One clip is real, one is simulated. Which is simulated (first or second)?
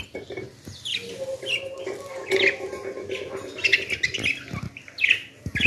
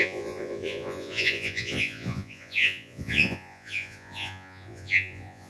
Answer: second